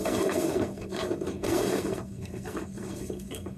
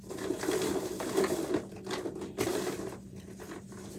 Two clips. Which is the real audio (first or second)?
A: second